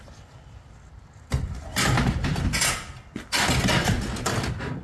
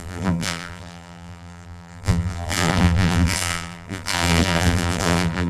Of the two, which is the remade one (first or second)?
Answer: second